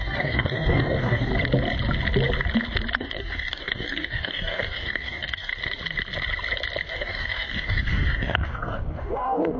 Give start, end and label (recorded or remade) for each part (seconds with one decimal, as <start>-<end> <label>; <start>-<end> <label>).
0.0-1.3 remade; 1.3-3.0 recorded; 3.0-5.5 remade; 5.5-6.9 recorded; 6.9-9.6 remade